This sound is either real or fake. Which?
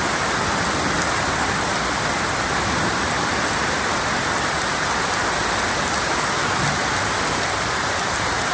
real